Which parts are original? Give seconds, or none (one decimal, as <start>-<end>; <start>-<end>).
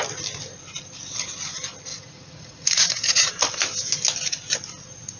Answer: 0.0-1.9; 3.3-5.2